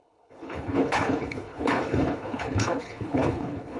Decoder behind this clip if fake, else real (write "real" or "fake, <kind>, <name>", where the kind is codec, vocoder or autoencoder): fake, codec, HILCodec